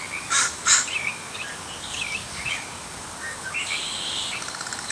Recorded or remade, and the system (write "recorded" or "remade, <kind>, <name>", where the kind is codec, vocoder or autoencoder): remade, codec, DAC